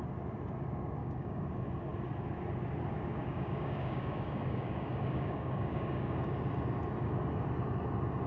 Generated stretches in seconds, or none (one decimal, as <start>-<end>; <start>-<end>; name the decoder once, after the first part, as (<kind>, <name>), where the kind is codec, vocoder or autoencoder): 1.0-1.5 (codec, DAC); 3.2-6.3